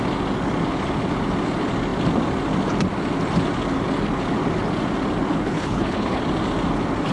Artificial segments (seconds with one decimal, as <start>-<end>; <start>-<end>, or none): 5.3-6.2